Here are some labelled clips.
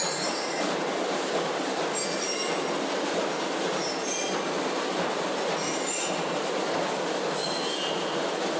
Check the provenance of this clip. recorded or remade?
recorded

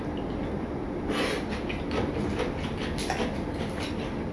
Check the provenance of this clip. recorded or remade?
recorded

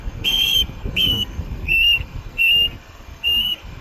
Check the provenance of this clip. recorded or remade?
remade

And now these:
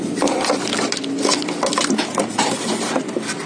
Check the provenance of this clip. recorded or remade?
recorded